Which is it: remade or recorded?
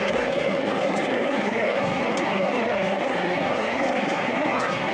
remade